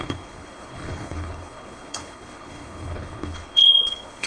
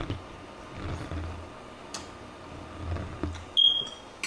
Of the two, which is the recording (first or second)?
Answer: second